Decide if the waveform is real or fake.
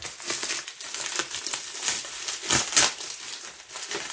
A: real